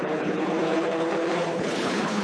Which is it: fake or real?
fake